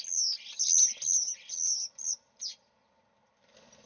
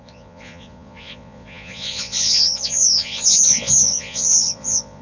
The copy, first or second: second